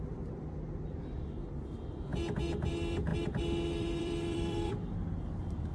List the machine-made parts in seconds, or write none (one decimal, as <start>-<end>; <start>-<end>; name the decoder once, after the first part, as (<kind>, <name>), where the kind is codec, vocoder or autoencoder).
3.1-4.7 (vocoder, BigVGAN v2)